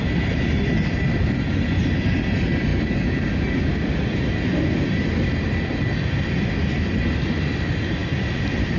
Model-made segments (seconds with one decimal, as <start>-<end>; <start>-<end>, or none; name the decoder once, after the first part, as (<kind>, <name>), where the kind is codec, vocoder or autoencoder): none